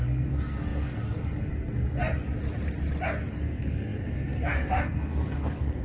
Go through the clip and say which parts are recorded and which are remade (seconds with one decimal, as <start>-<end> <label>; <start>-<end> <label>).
0.0-2.0 remade; 2.0-3.3 recorded; 3.3-5.8 remade